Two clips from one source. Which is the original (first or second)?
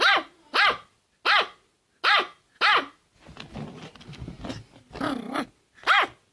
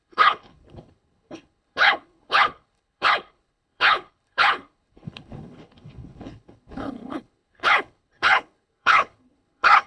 first